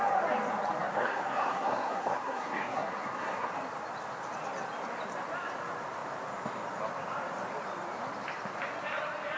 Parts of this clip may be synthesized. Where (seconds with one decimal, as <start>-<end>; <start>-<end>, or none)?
0.8-3.5